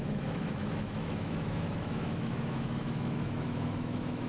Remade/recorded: remade